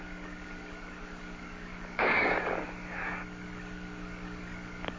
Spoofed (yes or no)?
yes